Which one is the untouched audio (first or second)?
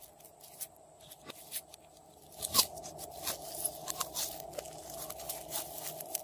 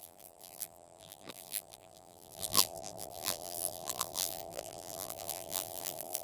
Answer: first